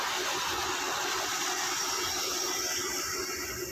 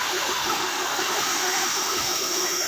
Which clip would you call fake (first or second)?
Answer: second